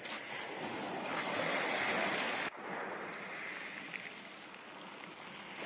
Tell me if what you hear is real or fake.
real